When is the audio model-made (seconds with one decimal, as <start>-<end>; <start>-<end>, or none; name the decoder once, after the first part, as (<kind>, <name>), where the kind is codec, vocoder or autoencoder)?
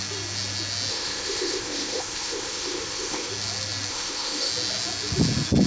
0.9-3.3 (codec, ZipCodec); 3.9-4.5